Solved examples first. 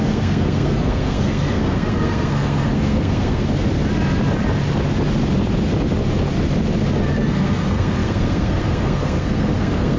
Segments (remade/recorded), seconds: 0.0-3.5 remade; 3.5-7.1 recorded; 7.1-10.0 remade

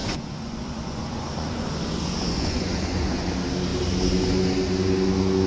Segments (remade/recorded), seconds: 0.0-3.3 remade; 3.3-5.5 recorded